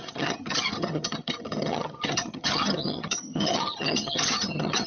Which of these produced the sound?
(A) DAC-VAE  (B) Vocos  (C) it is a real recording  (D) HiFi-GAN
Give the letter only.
D